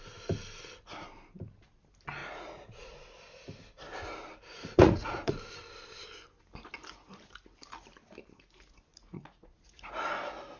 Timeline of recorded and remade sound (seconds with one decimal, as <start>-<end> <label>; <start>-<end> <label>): 0.0-2.2 recorded; 2.2-3.2 remade; 3.2-4.5 recorded; 4.5-5.3 remade; 5.3-8.9 recorded; 8.9-10.0 remade; 10.0-10.6 recorded